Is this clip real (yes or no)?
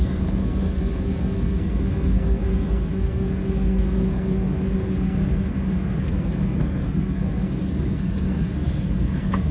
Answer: no